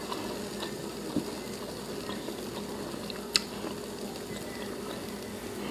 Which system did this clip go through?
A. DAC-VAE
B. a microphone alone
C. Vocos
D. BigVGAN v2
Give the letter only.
B